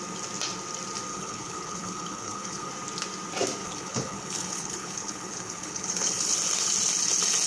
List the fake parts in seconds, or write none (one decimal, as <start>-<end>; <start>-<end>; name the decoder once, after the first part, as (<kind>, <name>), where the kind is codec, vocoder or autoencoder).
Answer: 1.1-2.7 (codec, HILCodec); 3.6-6.3